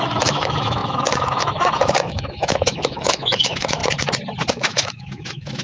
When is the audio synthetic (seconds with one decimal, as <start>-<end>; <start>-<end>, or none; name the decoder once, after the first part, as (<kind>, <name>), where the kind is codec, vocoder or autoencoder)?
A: 0.0-3.8 (autoencoder, DAC-VAE); 4.5-5.6